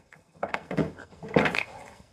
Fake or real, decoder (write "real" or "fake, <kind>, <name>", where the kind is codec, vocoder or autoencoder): fake, codec, SNAC